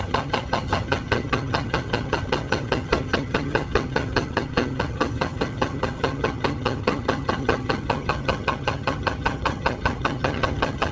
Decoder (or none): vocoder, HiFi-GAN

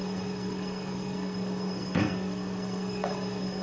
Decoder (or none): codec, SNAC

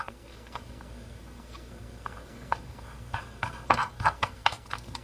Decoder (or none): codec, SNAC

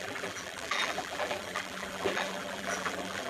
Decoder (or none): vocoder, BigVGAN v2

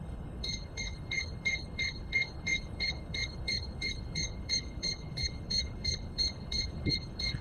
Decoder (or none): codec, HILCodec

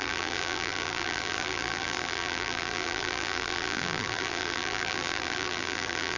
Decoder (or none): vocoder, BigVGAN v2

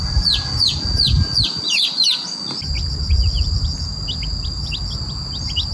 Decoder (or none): none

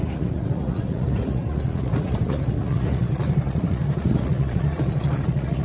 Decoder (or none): vocoder, Vocos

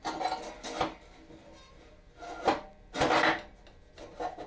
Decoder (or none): none